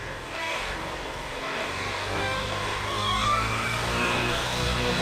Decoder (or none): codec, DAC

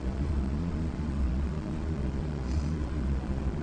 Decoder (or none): vocoder, Vocos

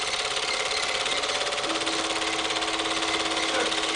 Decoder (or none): none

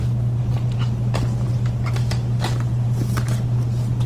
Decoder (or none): none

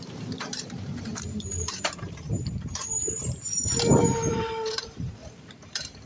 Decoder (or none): vocoder, BigVGAN v2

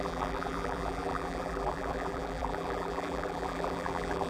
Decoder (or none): vocoder, BigVGAN v2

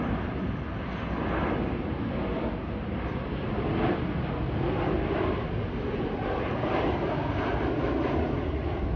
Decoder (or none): none